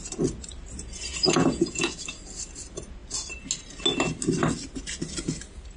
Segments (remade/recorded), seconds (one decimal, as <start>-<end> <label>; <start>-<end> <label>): 0.0-1.1 recorded; 1.1-2.0 remade; 2.0-5.8 recorded